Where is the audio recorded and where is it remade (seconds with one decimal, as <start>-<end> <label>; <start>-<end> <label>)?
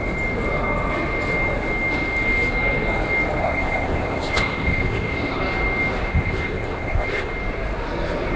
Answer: 0.0-3.4 recorded; 3.4-5.4 remade; 5.4-6.1 recorded; 6.1-7.3 remade; 7.3-8.4 recorded